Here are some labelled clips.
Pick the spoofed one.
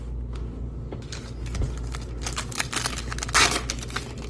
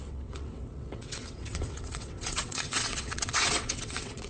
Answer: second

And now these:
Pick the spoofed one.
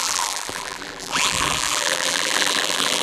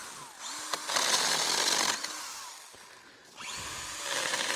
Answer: first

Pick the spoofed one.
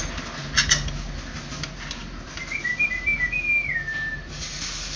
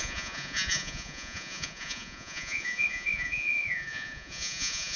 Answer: second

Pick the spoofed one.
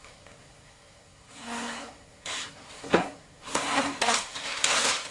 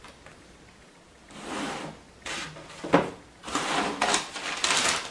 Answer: first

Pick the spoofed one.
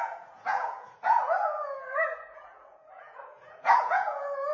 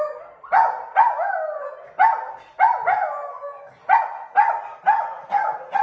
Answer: first